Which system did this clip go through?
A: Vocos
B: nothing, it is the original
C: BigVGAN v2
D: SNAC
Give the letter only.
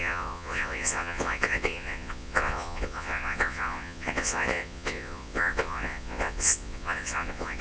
A